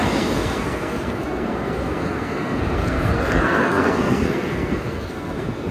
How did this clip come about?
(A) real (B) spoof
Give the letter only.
B